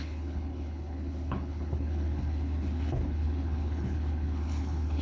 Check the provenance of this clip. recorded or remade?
remade